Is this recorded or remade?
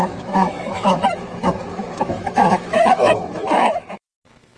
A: remade